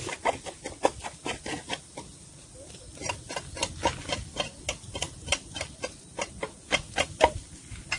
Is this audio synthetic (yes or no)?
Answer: no